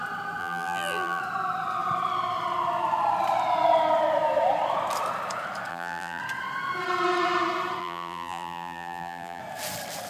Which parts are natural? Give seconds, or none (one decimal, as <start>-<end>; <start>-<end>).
0.0-0.4; 1.2-5.7; 6.2-7.8; 9.4-10.1